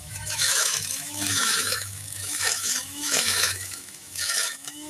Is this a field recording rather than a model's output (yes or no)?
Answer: no